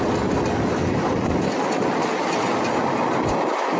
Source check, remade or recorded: recorded